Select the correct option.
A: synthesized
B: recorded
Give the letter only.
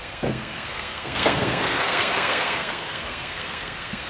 A